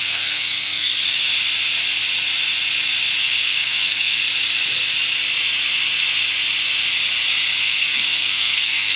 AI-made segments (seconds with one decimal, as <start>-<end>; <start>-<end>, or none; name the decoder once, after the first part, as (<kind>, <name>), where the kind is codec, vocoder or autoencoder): 0.0-0.9 (codec, SNAC); 3.2-4.2; 7.6-9.0